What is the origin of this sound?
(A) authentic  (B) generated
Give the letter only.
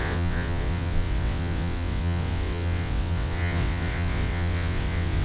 B